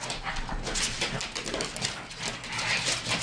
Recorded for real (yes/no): yes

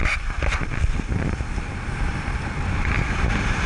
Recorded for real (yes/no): yes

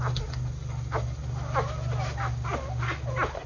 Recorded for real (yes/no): yes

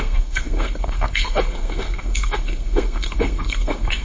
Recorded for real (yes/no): no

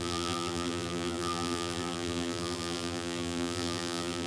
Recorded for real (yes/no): no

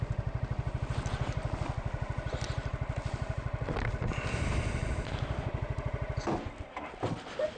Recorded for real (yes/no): yes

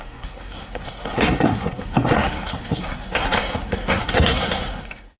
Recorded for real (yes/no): no